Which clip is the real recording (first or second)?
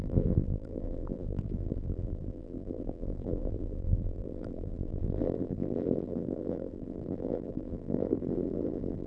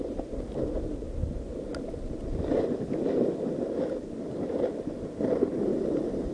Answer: second